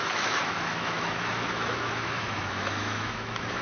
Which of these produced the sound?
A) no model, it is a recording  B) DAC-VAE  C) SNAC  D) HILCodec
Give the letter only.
B